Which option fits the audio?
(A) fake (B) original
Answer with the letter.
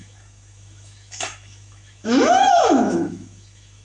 A